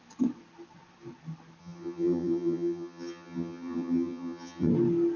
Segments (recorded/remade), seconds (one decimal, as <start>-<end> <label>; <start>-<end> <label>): 0.0-1.6 recorded; 1.6-4.7 remade; 4.7-5.2 recorded